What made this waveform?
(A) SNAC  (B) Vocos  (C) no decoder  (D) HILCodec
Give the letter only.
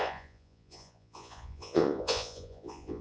B